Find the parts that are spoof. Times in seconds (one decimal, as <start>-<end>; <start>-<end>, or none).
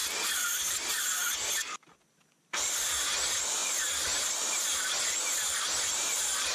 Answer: none